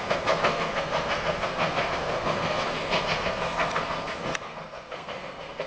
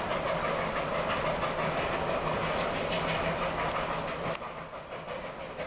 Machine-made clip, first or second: first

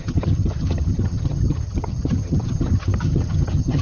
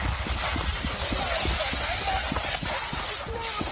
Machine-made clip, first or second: first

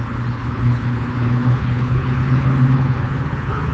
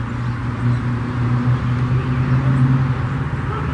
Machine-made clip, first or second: first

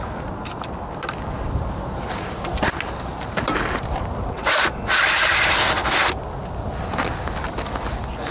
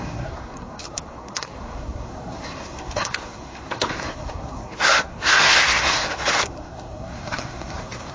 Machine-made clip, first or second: second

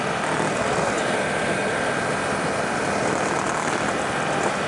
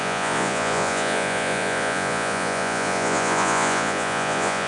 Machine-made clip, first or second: second